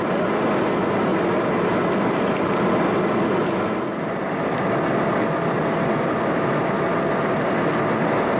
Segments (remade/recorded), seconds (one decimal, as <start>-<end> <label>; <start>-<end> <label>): 0.0-8.4 recorded